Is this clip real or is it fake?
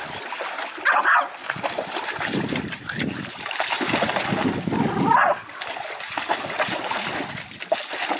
real